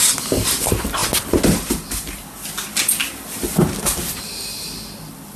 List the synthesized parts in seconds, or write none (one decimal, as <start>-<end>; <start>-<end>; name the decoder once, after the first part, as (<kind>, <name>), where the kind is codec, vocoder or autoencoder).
none